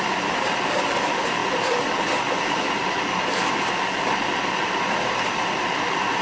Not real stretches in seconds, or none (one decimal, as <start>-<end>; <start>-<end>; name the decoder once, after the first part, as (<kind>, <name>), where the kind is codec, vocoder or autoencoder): none